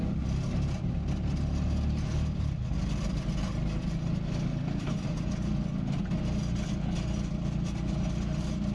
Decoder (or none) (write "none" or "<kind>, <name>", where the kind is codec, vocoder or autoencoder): none